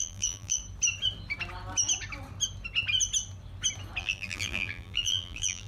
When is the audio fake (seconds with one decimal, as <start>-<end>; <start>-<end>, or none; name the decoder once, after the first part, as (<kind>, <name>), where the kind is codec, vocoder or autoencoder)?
0.0-0.6 (vocoder, BigVGAN v2); 4.0-5.7